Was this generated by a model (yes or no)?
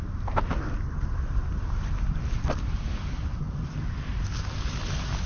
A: no